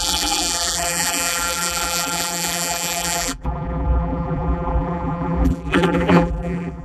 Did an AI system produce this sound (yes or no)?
yes